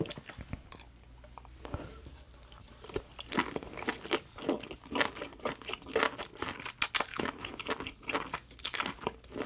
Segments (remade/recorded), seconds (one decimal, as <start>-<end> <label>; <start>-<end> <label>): 0.0-7.1 recorded; 7.1-7.7 remade; 7.7-9.5 recorded